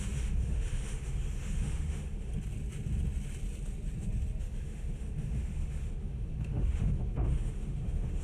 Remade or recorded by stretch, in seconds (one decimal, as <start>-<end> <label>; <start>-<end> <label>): 0.0-2.3 remade; 2.3-4.4 recorded; 4.4-8.2 remade

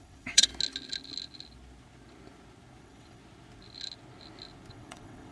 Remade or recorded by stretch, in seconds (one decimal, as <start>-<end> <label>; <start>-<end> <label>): 0.0-0.5 remade; 0.5-2.8 recorded; 2.8-3.2 remade; 3.2-4.7 recorded; 4.7-5.3 remade